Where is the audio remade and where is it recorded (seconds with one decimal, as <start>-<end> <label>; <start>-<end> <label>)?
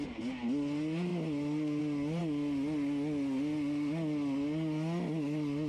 0.0-5.7 recorded